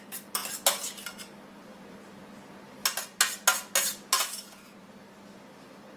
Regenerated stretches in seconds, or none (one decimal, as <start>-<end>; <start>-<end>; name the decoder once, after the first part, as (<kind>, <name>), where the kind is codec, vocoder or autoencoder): none